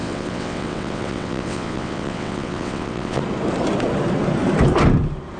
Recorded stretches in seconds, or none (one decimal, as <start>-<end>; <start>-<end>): 3.2-5.4